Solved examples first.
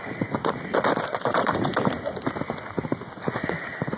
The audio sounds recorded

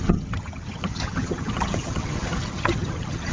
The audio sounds remade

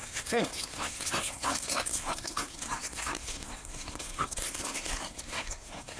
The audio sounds remade